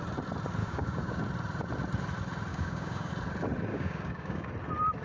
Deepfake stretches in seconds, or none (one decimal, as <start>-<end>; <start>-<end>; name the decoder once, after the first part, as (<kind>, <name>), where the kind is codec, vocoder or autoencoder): 0.6-1.2 (codec, DAC); 2.5-3.1; 3.7-4.5